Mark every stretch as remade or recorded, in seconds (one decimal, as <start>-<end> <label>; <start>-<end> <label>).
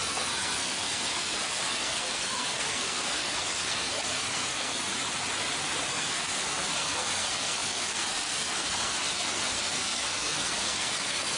0.0-4.9 remade; 4.9-5.9 recorded; 5.9-11.4 remade